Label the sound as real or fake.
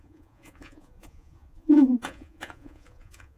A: fake